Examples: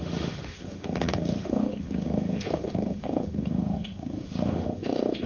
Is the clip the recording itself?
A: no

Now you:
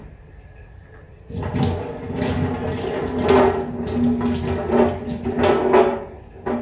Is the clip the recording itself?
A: yes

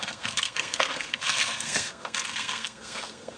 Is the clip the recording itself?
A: no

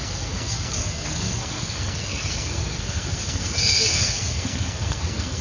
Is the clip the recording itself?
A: no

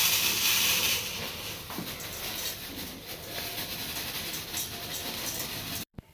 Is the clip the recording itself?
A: yes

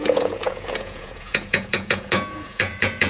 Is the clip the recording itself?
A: no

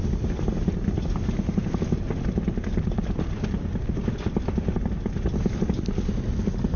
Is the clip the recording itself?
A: yes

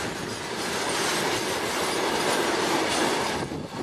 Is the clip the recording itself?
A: yes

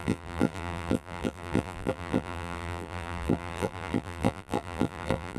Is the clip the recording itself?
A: no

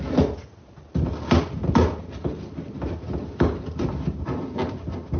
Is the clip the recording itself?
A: yes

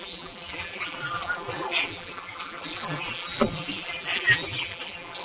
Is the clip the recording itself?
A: no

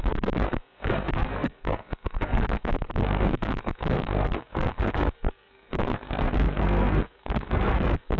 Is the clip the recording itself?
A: no